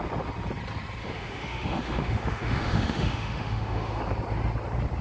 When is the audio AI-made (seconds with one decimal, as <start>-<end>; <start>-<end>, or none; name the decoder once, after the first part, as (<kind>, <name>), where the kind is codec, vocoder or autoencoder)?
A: 1.0-4.0 (autoencoder, DAC-VAE)